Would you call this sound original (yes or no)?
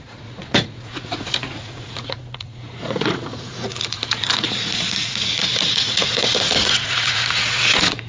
no